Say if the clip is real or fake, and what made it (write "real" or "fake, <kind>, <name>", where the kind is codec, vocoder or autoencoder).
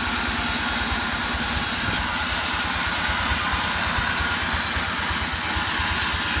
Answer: real